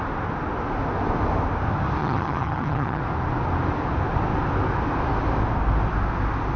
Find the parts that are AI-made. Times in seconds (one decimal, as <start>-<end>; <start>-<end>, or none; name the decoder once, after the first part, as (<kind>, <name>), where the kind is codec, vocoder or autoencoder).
2.0-3.0 (vocoder, HiFi-GAN)